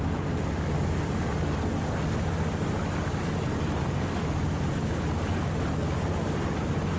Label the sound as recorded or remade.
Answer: recorded